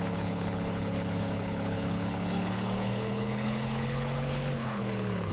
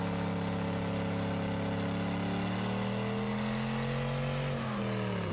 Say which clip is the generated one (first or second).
first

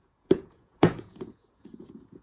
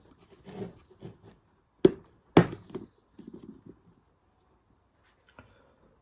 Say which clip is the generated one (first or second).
first